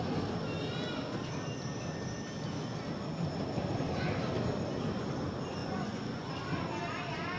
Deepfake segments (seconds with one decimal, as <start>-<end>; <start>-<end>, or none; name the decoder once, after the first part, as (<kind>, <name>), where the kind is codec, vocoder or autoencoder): 5.6-6.3 (vocoder, Vocos)